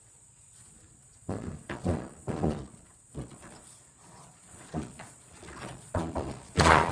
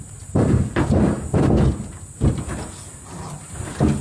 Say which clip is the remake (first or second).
first